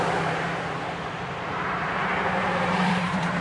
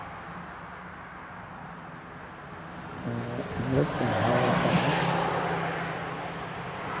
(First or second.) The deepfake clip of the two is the first